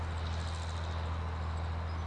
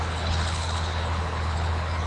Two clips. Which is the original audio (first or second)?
first